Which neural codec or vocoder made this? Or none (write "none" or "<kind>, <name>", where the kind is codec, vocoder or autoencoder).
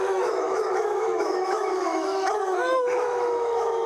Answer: autoencoder, DAC-VAE